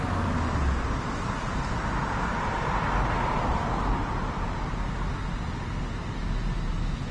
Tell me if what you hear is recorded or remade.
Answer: recorded